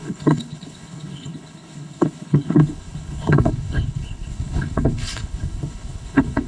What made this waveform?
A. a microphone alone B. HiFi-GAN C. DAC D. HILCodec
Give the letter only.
D